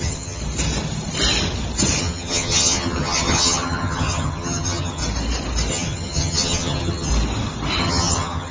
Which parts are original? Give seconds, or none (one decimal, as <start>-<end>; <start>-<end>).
0.4-2.0; 5.0-5.7; 7.1-7.8